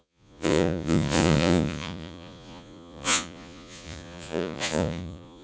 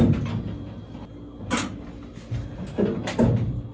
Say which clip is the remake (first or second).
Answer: first